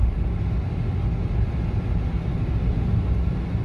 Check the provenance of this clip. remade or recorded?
recorded